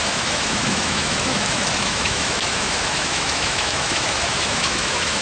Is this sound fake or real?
fake